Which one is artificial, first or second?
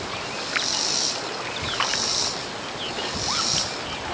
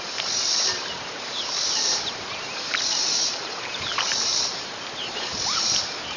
second